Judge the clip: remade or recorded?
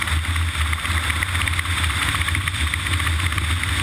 recorded